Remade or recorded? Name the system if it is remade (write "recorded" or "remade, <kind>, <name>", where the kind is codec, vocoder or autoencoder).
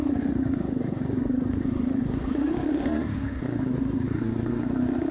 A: remade, codec, SNAC